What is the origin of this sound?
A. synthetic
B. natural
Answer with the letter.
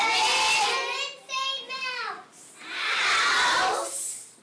B